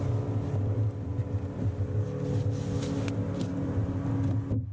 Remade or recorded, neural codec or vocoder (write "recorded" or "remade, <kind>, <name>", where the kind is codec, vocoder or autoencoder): recorded